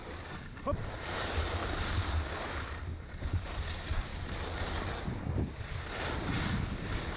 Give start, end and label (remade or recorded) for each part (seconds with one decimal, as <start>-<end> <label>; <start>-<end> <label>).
0.0-0.9 recorded; 0.9-1.6 remade; 1.6-3.1 recorded; 3.1-4.1 remade; 4.1-5.2 recorded; 5.2-7.2 remade